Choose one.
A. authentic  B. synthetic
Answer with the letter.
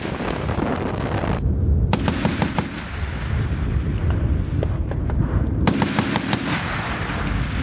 A